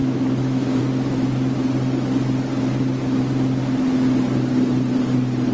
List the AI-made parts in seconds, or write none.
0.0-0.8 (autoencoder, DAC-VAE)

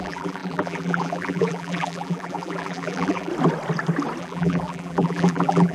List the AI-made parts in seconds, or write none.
0.0-3.3 (vocoder, BigVGAN v2); 4.2-5.7